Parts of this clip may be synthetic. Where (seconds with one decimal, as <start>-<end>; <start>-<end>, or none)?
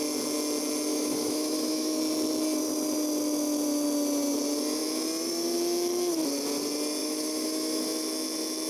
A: 0.9-2.0; 7.0-7.8